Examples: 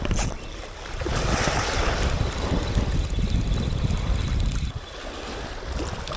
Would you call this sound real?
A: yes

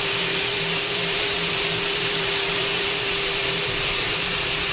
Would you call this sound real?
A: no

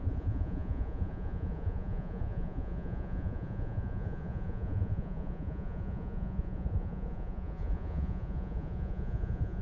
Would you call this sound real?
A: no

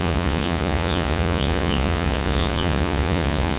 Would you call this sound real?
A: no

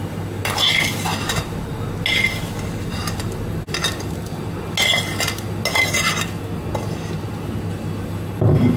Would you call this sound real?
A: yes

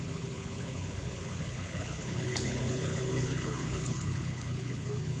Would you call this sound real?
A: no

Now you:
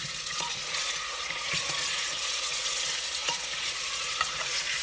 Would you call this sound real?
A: no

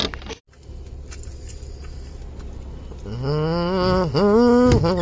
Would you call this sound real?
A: yes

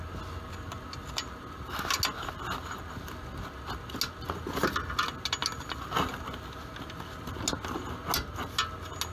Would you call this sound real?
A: yes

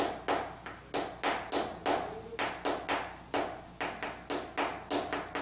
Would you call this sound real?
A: yes